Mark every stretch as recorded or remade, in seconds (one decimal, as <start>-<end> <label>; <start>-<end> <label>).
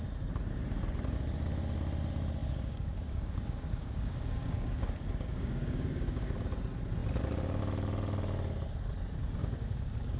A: 0.0-2.4 recorded; 2.4-6.4 remade; 6.4-9.4 recorded; 9.4-10.2 remade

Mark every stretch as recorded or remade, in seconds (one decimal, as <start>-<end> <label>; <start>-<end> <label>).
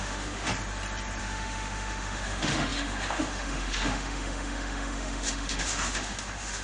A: 0.0-0.5 remade; 0.5-1.2 recorded; 1.2-6.6 remade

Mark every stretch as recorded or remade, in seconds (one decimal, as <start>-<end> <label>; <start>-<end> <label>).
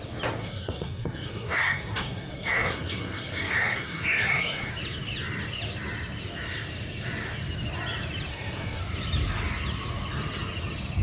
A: 0.0-0.4 recorded; 0.4-4.7 remade; 4.7-8.3 recorded; 8.3-8.8 remade; 8.8-11.0 recorded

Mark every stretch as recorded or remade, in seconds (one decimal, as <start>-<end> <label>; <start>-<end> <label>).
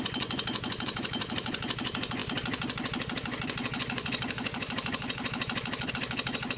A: 0.0-6.6 remade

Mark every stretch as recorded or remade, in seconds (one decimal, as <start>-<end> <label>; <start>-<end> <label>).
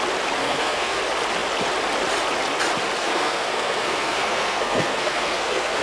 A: 0.0-0.4 recorded; 0.4-1.0 remade; 1.0-3.0 recorded; 3.0-5.8 remade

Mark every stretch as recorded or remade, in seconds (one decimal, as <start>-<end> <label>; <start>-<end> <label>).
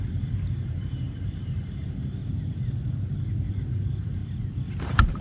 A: 0.0-2.2 remade; 2.2-3.5 recorded; 3.5-4.2 remade; 4.2-4.8 recorded; 4.8-5.2 remade